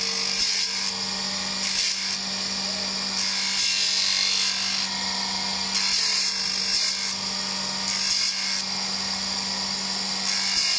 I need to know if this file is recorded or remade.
recorded